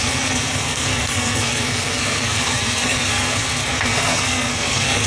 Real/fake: fake